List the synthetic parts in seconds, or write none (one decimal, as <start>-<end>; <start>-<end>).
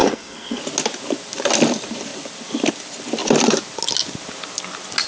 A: 0.0-0.6